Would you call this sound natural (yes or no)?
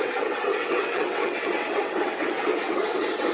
no